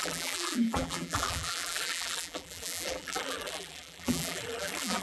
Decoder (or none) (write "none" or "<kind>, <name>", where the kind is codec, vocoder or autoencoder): vocoder, BigVGAN v2